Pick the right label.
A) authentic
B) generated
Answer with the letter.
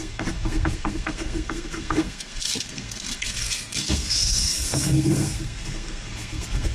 B